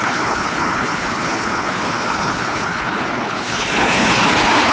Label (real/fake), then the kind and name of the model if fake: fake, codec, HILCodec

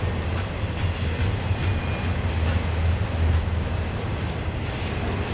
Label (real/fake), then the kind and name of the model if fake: real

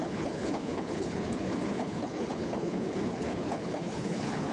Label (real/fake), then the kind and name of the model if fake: fake, codec, HILCodec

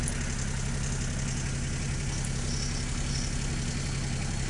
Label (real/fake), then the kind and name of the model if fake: real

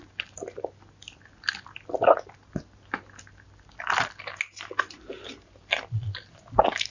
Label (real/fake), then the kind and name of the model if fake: real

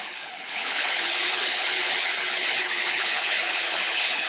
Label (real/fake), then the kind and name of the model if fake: fake, codec, HILCodec